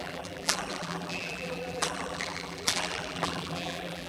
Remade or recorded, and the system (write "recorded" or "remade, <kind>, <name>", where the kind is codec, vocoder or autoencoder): remade, vocoder, BigVGAN v2